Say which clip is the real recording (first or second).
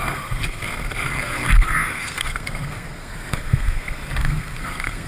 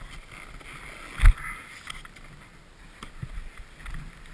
second